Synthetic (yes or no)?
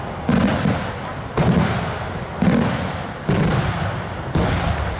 no